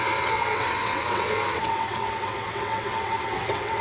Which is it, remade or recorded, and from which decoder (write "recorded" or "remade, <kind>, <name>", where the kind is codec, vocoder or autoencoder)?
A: remade, vocoder, WaveNeXt